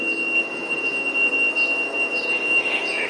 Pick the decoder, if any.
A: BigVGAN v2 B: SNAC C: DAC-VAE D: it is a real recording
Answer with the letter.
C